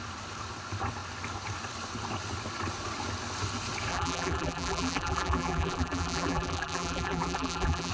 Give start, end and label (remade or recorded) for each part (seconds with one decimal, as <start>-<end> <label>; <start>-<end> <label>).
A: 0.0-3.9 recorded; 3.9-7.9 remade